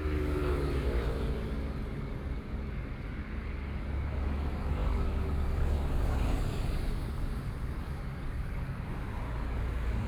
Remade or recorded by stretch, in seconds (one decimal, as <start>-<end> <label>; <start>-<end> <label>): 0.0-10.1 remade